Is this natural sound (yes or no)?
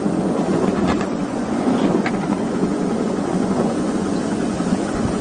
no